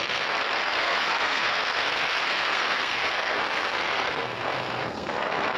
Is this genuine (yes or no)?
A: no